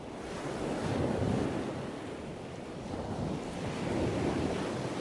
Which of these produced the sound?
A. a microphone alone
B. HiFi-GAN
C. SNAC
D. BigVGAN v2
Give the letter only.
A